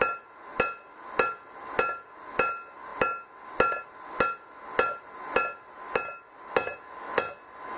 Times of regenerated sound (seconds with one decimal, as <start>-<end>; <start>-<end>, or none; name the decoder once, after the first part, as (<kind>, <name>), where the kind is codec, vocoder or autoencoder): none